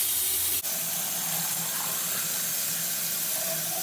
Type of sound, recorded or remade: recorded